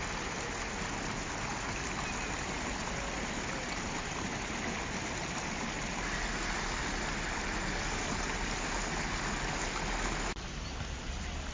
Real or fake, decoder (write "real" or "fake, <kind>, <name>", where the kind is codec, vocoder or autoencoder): real